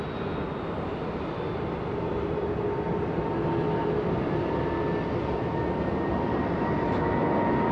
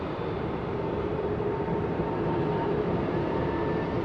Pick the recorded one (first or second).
first